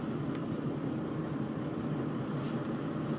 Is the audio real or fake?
real